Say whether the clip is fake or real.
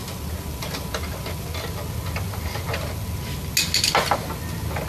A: real